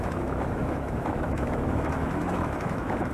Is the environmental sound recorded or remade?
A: remade